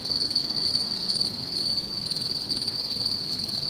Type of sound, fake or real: fake